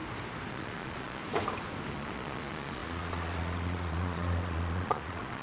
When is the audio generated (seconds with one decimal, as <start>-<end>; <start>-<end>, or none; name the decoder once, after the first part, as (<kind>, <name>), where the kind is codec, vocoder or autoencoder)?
0.5-1.2 (vocoder, Vocos); 1.9-5.4